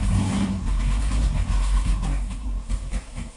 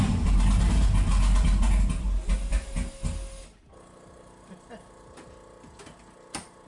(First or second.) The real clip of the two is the second